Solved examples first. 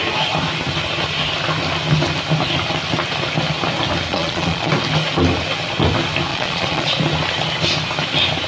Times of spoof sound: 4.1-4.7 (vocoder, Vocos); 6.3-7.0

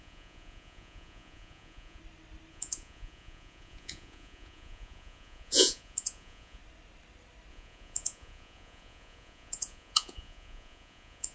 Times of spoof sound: 0.0-2.0 (vocoder, Vocos); 2.5-6.6; 7.5-11.3